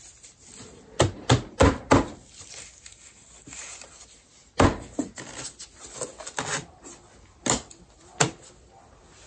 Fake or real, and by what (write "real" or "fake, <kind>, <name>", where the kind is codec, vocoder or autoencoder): real